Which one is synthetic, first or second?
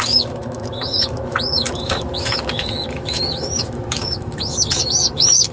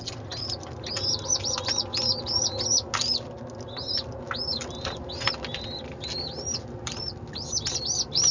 first